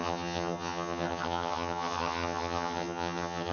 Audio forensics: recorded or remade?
remade